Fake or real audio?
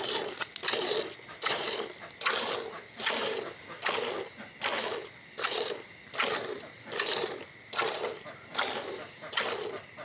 real